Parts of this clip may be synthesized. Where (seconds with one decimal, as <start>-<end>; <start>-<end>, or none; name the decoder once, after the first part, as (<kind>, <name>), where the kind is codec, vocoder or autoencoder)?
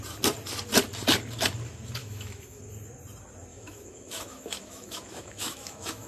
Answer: 2.0-2.6 (autoencoder, DAC-VAE); 3.5-6.1